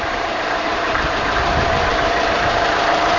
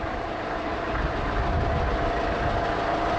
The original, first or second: second